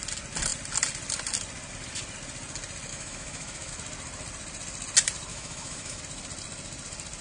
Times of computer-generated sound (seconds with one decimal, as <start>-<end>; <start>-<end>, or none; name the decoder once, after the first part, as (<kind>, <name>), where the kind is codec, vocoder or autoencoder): 2.9-3.7 (autoencoder, DAC-VAE); 5.3-6.0